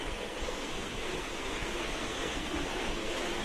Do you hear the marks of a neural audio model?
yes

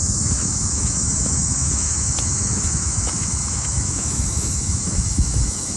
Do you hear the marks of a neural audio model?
yes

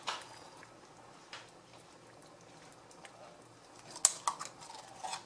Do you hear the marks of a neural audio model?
no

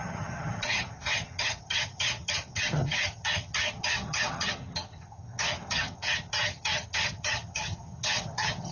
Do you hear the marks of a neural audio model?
yes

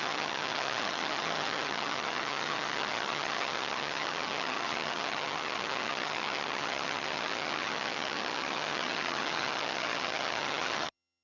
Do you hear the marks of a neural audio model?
yes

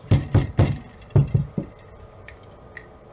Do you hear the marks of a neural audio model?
no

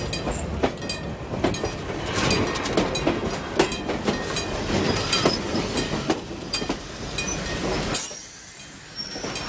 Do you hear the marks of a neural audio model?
no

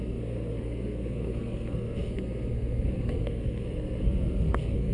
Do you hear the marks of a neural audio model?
yes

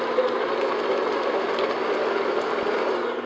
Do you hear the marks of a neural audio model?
no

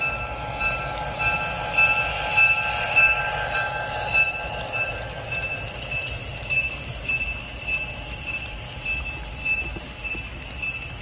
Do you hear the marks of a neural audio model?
no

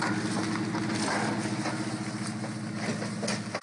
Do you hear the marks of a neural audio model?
no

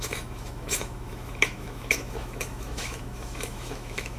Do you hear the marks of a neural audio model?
yes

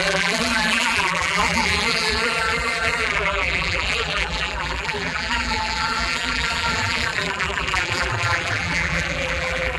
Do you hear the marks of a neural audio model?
yes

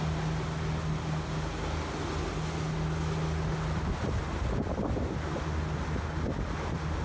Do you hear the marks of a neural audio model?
no